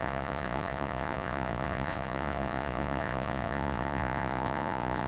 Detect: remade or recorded remade